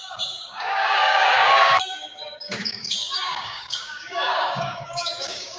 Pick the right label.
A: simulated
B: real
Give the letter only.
A